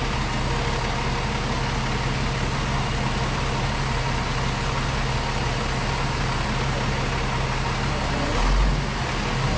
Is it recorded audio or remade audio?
recorded